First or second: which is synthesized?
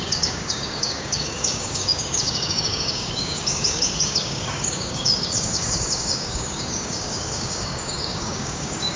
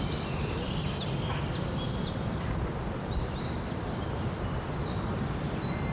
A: first